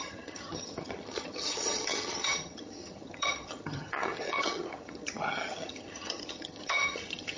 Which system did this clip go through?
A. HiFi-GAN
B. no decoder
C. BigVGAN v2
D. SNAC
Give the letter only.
A